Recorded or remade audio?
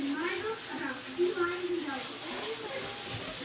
recorded